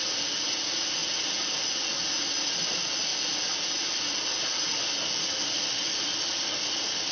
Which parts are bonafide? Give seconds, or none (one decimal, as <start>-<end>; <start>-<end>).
0.0-7.1